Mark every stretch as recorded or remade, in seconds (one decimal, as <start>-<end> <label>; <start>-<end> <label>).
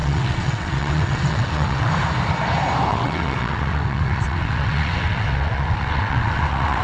0.0-1.9 remade; 1.9-2.9 recorded; 2.9-6.8 remade